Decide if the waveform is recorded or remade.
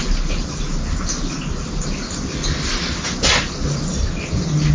recorded